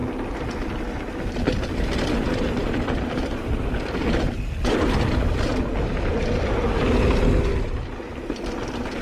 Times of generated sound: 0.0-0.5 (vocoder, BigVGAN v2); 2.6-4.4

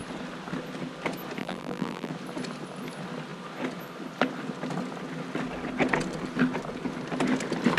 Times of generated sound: 1.4-2.1 (vocoder, BigVGAN v2)

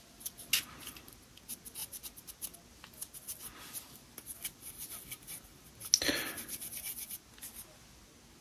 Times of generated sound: none

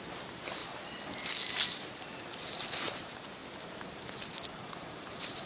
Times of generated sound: 0.0-0.6 (vocoder, BigVGAN v2); 1.7-3.4; 4.5-5.5

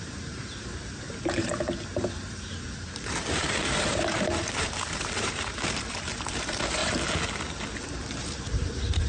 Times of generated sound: 0.0-6.8 (vocoder, BigVGAN v2); 7.9-9.1

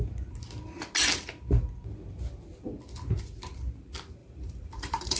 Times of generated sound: 4.2-5.2 (vocoder, BigVGAN v2)

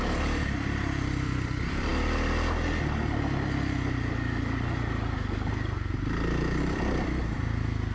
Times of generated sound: 0.0-1.9 (vocoder, BigVGAN v2); 6.6-7.9